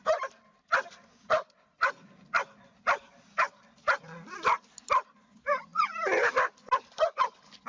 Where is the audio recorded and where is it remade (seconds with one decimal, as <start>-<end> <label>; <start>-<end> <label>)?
0.0-7.7 recorded